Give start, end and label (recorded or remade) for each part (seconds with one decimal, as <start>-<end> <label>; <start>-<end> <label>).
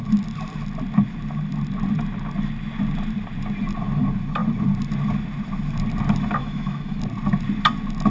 0.0-6.4 recorded; 6.4-7.0 remade; 7.0-8.1 recorded